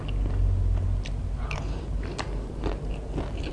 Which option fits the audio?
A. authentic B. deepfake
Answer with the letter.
A